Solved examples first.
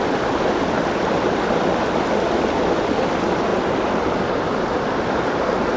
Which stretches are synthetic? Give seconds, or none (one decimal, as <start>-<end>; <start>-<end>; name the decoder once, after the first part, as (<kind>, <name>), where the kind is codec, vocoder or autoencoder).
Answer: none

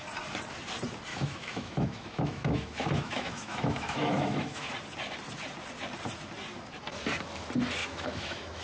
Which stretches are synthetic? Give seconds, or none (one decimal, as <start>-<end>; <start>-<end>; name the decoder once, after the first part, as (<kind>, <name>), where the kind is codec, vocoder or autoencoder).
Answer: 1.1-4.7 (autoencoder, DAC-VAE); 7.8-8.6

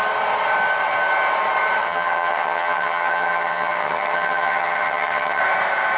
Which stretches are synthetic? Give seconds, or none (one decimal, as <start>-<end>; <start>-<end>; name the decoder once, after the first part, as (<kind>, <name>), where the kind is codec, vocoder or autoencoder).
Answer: 1.8-5.4 (vocoder, HiFi-GAN)